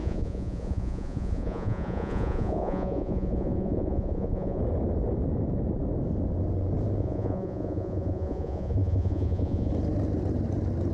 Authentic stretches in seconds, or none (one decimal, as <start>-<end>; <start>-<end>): 4.6-7.0; 9.7-10.9